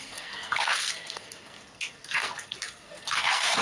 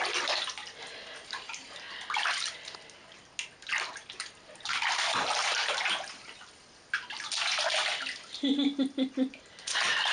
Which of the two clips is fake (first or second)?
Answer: first